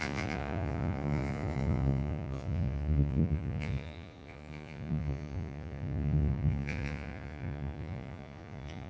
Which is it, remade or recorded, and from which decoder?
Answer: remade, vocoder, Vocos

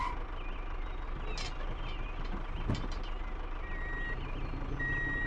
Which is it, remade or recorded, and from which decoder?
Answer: recorded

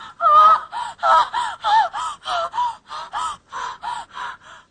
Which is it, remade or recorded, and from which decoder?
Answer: recorded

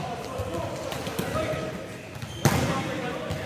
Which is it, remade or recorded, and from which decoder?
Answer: recorded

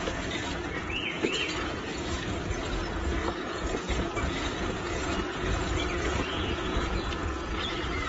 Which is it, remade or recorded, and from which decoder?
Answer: remade, vocoder, Vocos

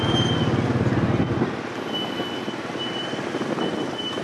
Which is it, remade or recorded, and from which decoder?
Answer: recorded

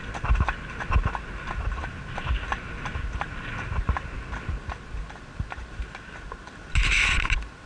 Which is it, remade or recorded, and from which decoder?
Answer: recorded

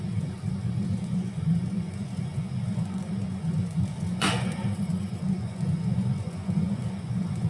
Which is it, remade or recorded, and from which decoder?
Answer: remade, vocoder, Vocos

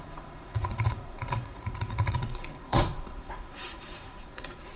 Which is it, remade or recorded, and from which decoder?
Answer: remade, vocoder, Vocos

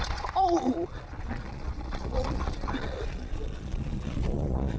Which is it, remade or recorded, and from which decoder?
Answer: remade, vocoder, Vocos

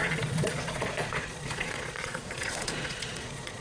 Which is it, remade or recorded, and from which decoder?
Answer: remade, vocoder, Vocos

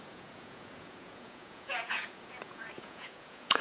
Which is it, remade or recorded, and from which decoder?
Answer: remade, vocoder, Vocos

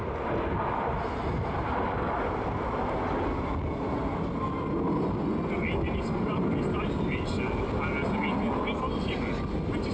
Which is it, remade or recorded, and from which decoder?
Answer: recorded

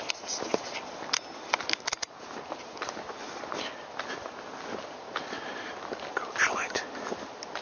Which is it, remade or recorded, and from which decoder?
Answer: recorded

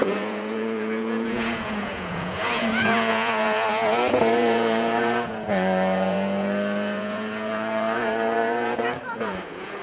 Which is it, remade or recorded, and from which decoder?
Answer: remade, vocoder, Vocos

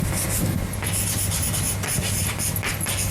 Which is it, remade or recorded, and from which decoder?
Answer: recorded